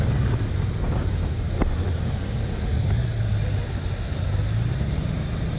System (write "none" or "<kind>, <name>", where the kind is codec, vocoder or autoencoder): none